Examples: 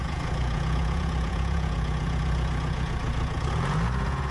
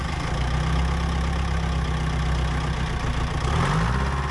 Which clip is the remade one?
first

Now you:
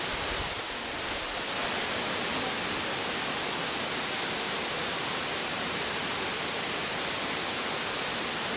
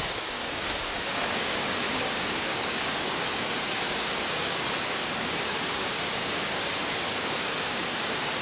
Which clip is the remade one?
second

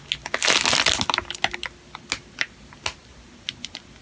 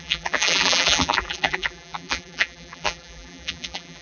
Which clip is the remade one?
second